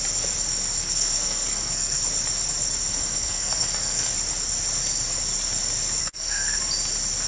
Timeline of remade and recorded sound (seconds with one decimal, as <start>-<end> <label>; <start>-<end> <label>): 0.0-0.8 recorded; 0.8-2.0 remade; 2.0-2.9 recorded; 2.9-4.1 remade; 4.1-6.0 recorded; 6.0-6.6 remade; 6.6-7.3 recorded